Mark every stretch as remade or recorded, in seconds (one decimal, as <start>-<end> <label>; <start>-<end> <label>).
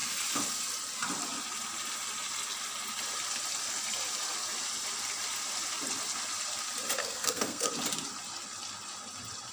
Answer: 0.0-7.0 recorded; 7.0-7.7 remade; 7.7-9.5 recorded